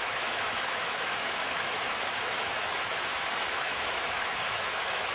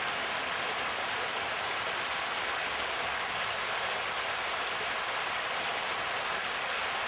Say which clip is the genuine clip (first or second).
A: second